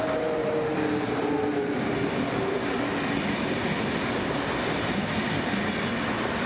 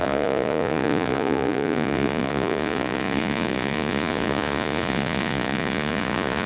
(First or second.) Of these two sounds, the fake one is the second